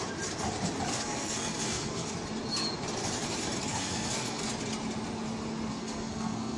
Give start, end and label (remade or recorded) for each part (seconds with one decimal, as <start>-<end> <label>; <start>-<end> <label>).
0.0-0.9 recorded; 0.9-2.1 remade; 2.1-3.7 recorded; 3.7-4.5 remade; 4.5-5.7 recorded; 5.7-6.6 remade